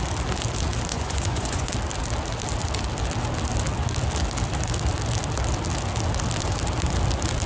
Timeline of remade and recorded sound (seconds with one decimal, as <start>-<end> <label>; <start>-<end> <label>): 0.0-0.9 recorded; 0.9-1.7 remade; 1.7-7.5 recorded